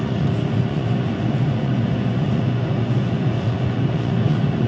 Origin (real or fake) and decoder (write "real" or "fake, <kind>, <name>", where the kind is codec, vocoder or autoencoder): fake, vocoder, Vocos